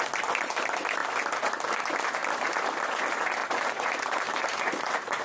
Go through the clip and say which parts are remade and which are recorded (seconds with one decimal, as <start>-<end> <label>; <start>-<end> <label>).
0.0-3.4 recorded; 3.4-5.2 remade